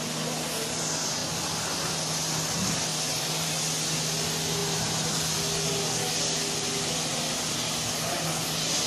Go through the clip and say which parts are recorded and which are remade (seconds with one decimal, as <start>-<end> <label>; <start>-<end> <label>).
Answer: 0.0-2.9 recorded; 2.9-3.5 remade; 3.5-8.9 recorded